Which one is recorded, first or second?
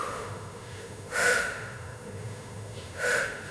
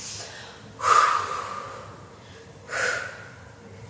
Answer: second